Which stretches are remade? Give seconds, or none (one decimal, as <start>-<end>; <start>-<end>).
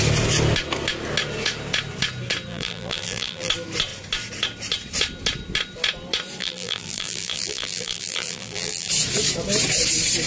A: 2.5-3.5; 6.4-8.9